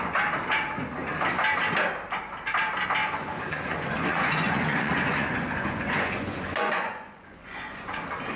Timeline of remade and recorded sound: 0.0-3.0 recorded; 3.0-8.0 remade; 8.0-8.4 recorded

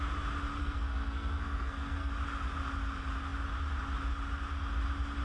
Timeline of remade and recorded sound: 0.0-0.6 recorded; 0.6-2.1 remade; 2.1-5.2 recorded

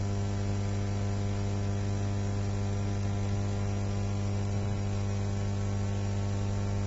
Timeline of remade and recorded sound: 0.0-6.9 recorded

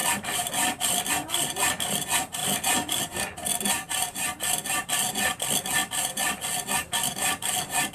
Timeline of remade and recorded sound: 0.0-1.1 remade; 1.1-2.4 recorded; 2.4-3.0 remade; 3.0-5.8 recorded; 5.8-6.4 remade; 6.4-7.9 recorded